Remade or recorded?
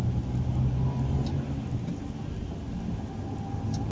recorded